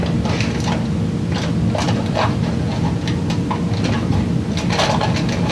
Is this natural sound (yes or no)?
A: yes